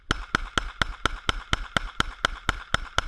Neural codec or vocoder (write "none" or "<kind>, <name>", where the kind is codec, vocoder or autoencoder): none